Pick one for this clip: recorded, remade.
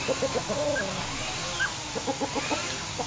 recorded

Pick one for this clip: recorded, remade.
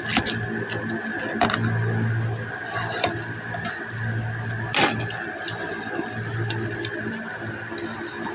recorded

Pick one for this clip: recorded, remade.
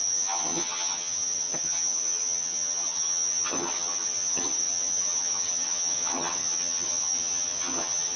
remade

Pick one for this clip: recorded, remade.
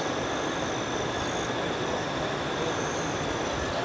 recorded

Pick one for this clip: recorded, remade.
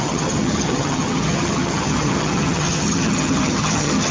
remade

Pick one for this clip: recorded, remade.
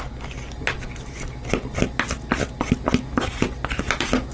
recorded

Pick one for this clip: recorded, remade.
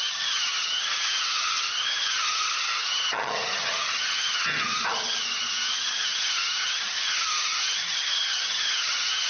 remade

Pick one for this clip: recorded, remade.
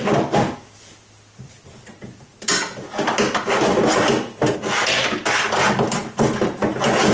recorded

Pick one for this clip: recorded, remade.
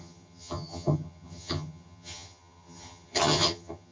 remade